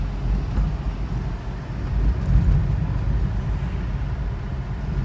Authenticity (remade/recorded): recorded